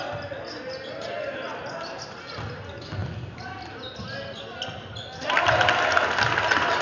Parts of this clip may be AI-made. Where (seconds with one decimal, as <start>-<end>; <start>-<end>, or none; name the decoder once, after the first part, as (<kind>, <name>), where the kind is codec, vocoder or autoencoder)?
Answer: none